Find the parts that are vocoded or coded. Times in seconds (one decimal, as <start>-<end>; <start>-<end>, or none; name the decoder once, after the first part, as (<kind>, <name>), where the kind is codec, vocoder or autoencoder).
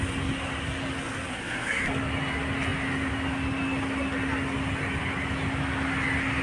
1.3-1.8 (codec, SNAC)